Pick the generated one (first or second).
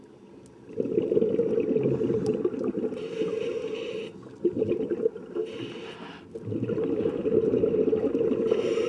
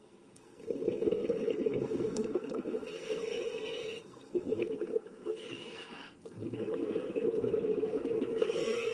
second